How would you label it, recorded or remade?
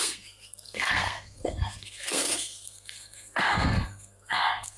remade